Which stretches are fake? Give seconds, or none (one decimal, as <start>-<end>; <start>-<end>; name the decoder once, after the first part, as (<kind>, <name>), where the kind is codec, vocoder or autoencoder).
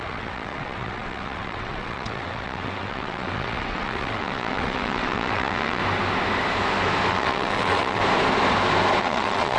0.0-5.8 (vocoder, WaveNeXt); 7.1-8.0; 9.0-9.6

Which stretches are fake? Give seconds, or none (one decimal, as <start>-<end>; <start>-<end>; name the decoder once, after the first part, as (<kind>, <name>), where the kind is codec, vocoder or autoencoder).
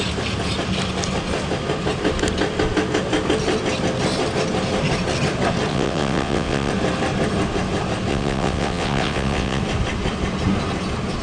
5.7-6.7 (vocoder, WaveNeXt); 8.1-9.6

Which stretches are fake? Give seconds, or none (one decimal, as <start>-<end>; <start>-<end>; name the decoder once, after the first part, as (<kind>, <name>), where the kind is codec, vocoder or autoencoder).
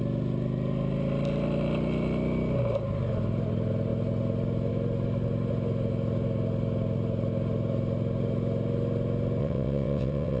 9.4-10.4 (vocoder, WaveNeXt)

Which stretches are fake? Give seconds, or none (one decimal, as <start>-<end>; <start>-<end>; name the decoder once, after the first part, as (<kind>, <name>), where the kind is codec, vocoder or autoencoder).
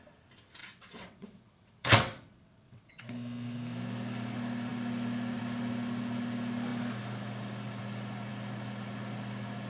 0.6-3.1 (vocoder, WaveNeXt)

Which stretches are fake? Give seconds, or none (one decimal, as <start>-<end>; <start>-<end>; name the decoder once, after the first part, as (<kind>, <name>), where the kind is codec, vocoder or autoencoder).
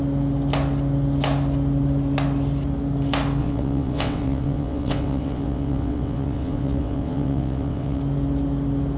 3.4-8.0 (vocoder, WaveNeXt)